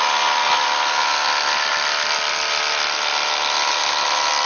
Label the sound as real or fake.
real